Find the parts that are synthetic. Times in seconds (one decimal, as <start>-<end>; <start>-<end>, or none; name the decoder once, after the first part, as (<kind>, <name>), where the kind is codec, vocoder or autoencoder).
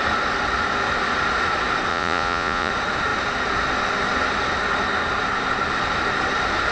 1.9-2.7 (vocoder, Vocos)